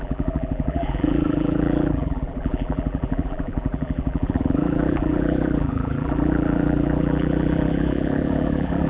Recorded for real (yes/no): no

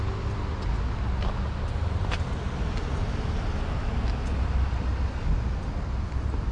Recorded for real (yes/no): yes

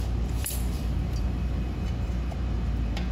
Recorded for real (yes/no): no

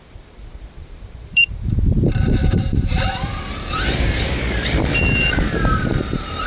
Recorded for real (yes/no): no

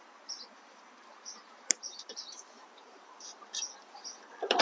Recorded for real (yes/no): no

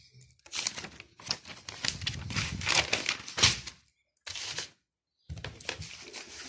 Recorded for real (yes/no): yes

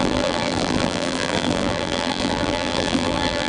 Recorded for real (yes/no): no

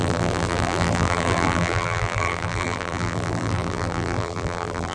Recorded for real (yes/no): no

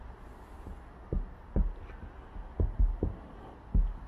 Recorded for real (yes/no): yes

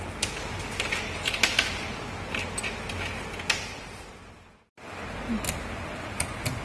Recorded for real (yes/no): yes